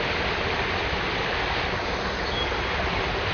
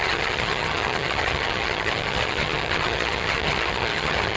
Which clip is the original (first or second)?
first